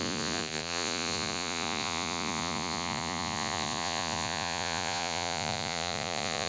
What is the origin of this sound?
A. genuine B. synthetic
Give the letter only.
B